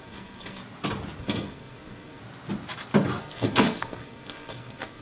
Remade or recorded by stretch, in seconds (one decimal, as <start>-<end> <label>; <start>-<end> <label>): 0.0-0.6 remade; 0.6-1.2 recorded; 1.2-2.2 remade; 2.2-3.2 recorded; 3.2-5.0 remade